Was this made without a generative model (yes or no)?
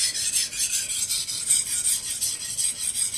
yes